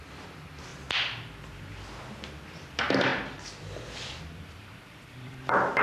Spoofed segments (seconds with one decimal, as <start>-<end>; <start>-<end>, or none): 0.0-0.7; 2.7-5.8